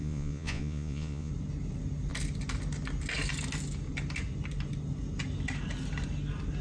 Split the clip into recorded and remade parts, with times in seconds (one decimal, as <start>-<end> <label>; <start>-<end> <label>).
0.0-1.3 remade; 1.3-6.6 recorded